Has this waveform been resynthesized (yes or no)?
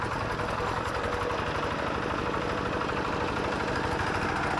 no